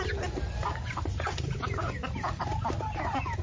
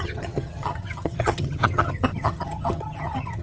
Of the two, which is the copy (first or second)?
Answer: second